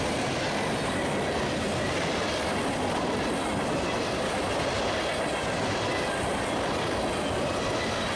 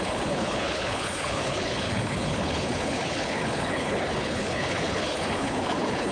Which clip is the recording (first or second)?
first